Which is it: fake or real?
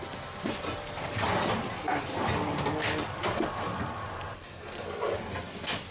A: real